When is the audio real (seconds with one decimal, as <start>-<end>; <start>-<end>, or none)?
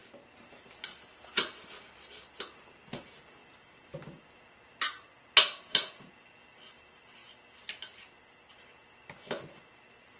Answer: 0.0-10.2